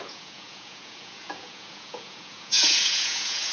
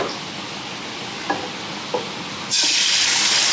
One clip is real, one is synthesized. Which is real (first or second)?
second